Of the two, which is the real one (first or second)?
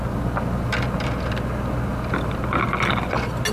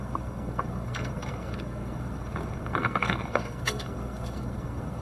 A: first